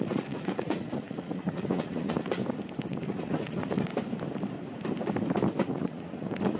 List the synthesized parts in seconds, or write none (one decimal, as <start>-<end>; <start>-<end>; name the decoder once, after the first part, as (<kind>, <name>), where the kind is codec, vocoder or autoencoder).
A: 0.0-2.4 (vocoder, Vocos); 2.9-3.9; 5.7-6.6